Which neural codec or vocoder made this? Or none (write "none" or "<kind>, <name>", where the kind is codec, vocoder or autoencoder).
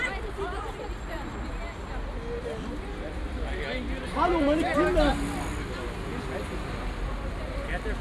none